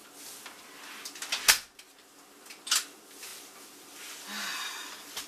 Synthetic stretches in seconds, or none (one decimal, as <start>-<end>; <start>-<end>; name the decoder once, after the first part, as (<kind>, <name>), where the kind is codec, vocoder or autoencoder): none